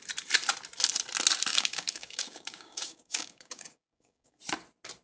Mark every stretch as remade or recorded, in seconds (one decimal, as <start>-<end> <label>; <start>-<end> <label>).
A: 0.0-1.5 recorded; 1.5-4.4 remade; 4.4-5.0 recorded